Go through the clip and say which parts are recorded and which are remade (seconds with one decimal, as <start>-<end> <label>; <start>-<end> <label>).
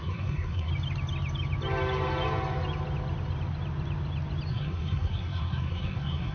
0.0-0.7 remade; 0.7-4.5 recorded; 4.5-6.3 remade